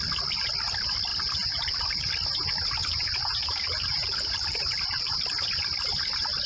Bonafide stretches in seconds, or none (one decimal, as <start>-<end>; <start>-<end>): 0.0-1.1; 2.1-2.8; 5.2-6.5